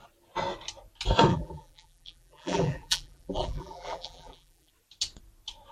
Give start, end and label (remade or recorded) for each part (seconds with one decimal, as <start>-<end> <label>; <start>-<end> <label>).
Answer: 0.0-1.3 recorded; 1.3-4.7 remade; 4.7-5.7 recorded